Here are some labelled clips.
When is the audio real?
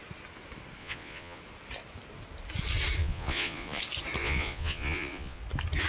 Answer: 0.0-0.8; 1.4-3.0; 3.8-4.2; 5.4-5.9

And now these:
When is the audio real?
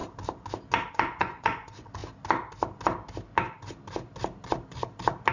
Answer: 0.0-0.9; 2.0-5.3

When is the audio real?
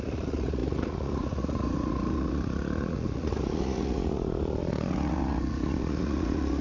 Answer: none